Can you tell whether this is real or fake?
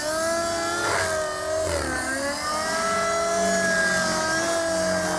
real